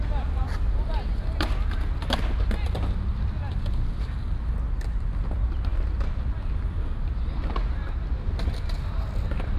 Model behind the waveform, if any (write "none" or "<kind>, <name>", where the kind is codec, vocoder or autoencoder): none